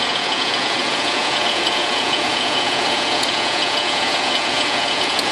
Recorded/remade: remade